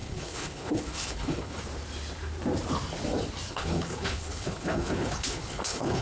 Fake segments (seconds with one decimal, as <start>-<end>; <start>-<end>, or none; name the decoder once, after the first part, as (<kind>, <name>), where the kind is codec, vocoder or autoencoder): 0.0-1.6 (codec, HILCodec); 3.5-6.0